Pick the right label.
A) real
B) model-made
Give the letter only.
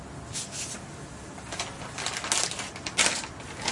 A